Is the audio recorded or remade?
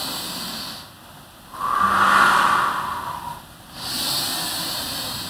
recorded